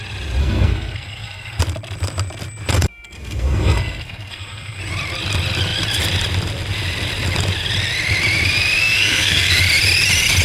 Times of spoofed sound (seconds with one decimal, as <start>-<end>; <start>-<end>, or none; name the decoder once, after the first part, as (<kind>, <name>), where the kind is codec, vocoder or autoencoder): 0.4-1.6 (codec, SNAC); 2.7-4.8; 8.8-9.5